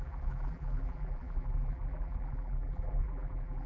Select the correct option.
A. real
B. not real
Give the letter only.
B